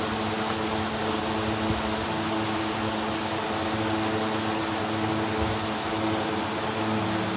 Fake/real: real